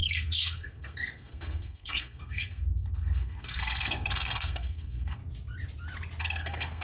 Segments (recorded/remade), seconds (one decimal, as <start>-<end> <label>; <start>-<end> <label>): 0.0-5.2 remade; 5.2-6.2 recorded; 6.2-6.8 remade